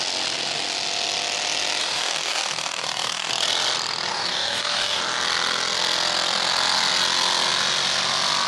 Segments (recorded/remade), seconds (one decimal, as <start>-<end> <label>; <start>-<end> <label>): 0.0-1.8 recorded; 1.8-3.3 remade; 3.3-4.1 recorded; 4.1-5.0 remade; 5.0-8.5 recorded